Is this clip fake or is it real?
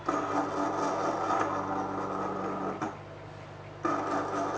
real